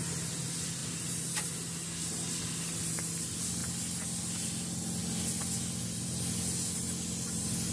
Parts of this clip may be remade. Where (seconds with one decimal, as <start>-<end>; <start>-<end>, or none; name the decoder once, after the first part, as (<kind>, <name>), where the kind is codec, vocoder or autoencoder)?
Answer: none